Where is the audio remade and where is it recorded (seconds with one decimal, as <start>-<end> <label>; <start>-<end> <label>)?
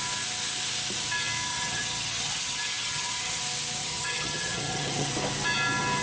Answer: 0.0-1.5 recorded; 1.5-3.4 remade; 3.4-3.8 recorded; 3.8-5.1 remade; 5.1-6.0 recorded